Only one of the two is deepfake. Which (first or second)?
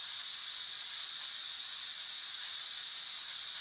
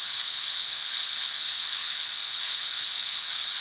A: second